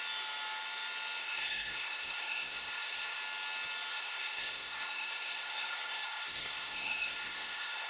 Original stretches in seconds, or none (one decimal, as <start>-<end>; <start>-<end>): 0.0-1.2; 3.2-3.9